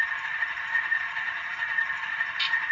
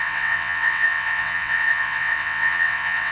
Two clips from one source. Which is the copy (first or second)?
second